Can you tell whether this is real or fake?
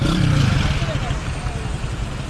real